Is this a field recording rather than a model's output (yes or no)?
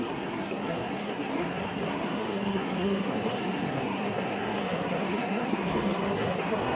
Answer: no